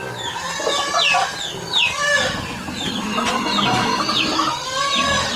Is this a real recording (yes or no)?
yes